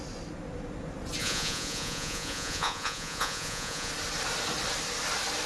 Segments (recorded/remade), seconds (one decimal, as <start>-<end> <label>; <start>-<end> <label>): 0.0-1.2 recorded; 1.2-3.9 remade; 3.9-5.5 recorded